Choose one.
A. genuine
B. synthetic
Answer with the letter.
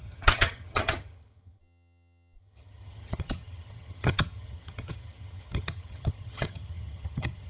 B